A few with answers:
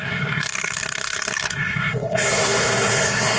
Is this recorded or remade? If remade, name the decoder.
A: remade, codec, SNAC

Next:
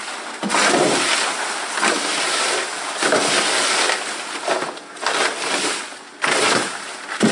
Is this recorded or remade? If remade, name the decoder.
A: recorded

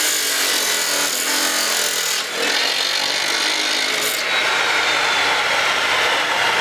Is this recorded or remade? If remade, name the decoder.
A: recorded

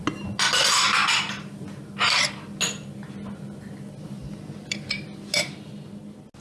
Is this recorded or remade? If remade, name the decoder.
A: recorded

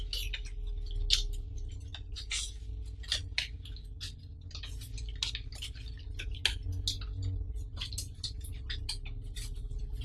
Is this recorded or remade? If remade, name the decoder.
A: recorded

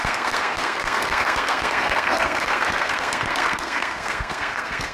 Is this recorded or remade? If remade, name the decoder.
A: remade, codec, SNAC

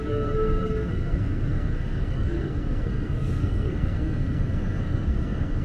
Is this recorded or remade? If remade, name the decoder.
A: remade, codec, SNAC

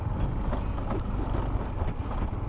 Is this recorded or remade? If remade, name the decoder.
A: recorded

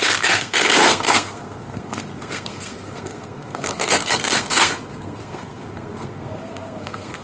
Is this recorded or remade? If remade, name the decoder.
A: remade, codec, SNAC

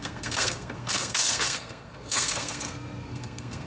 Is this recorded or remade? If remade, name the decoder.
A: remade, codec, SNAC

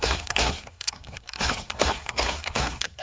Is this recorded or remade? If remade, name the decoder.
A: remade, codec, SNAC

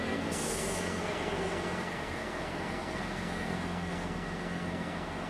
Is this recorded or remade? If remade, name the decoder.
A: remade, codec, SNAC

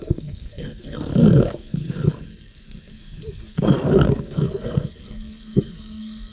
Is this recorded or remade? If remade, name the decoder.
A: remade, codec, SNAC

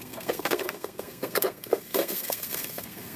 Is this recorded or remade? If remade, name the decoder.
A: remade, codec, SNAC